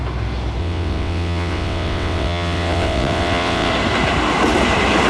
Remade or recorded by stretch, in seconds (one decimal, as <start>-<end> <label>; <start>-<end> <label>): 0.0-0.6 recorded; 0.6-3.7 remade; 3.7-5.1 recorded